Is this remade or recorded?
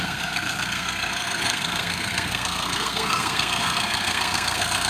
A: remade